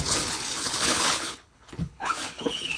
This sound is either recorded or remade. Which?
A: remade